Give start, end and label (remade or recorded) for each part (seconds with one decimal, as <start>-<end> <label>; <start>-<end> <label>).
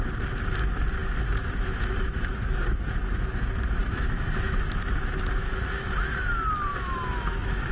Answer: 0.0-1.0 recorded; 1.0-3.4 remade; 3.4-3.8 recorded; 3.8-6.3 remade; 6.3-6.7 recorded; 6.7-7.7 remade